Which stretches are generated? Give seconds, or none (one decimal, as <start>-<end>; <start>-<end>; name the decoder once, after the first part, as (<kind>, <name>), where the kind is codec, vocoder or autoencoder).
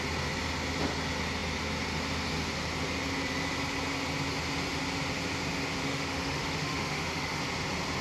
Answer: 5.8-7.4 (autoencoder, DAC-VAE)